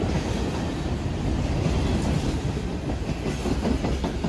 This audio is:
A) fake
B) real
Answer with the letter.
B